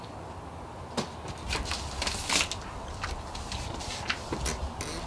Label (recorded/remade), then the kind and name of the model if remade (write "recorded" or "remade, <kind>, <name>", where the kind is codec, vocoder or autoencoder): recorded